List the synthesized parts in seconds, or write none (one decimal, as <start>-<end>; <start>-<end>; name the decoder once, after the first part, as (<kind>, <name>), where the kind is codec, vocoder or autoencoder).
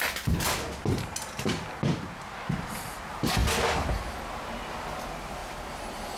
none